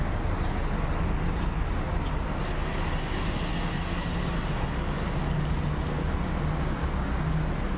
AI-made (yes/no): no